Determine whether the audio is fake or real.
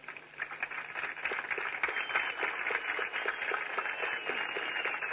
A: real